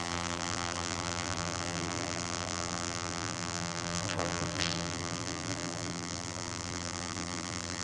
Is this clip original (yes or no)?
no